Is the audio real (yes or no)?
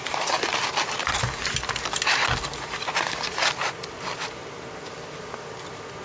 yes